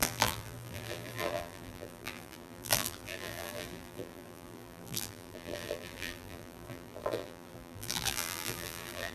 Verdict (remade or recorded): remade